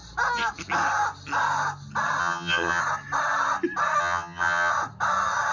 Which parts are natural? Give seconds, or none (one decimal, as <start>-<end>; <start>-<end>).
0.0-2.2; 2.8-4.0; 4.7-5.5

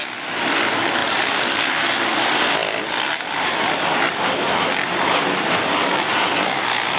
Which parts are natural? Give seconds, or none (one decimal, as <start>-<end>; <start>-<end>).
0.0-7.0

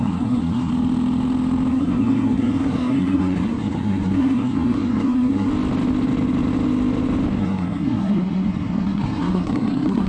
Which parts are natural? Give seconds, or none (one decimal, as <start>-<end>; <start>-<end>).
0.7-1.7; 5.5-7.4

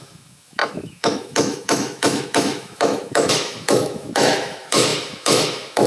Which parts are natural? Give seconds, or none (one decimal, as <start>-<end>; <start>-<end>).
none

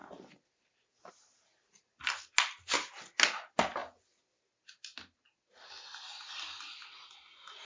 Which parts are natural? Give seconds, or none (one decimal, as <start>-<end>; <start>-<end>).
0.0-7.6